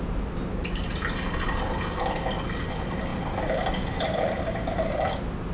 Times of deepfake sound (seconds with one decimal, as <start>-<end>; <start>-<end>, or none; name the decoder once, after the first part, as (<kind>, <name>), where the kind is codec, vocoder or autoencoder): 3.1-4.4 (vocoder, BigVGAN v2)